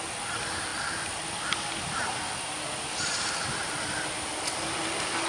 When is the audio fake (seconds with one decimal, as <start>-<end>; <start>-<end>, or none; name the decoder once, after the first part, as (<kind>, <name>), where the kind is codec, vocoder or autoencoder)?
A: 0.0-5.3 (vocoder, BigVGAN v2)